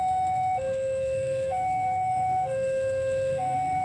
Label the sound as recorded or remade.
remade